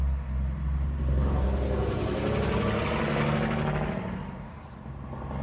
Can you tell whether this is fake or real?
real